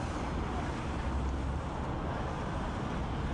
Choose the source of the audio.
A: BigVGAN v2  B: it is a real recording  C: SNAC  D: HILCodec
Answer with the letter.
B